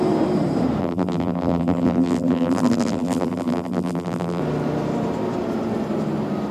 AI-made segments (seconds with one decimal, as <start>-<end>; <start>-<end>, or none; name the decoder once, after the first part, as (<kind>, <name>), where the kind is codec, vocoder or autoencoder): 0.8-4.4 (vocoder, BigVGAN v2)